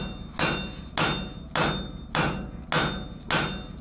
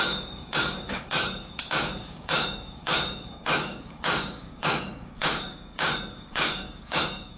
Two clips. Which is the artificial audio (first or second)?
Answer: second